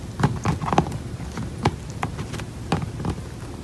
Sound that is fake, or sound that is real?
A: real